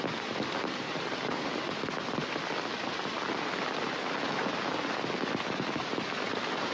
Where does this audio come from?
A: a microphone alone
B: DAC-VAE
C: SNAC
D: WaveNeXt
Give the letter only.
A